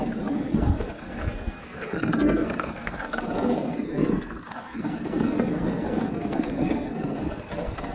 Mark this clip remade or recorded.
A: remade